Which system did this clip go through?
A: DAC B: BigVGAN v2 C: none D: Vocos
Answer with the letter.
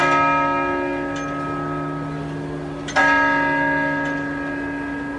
C